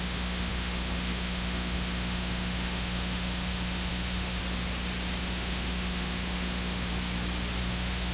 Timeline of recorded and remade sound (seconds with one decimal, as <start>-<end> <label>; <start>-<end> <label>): 0.0-4.4 remade; 4.4-5.2 recorded; 5.2-6.9 remade; 6.9-7.6 recorded; 7.6-8.1 remade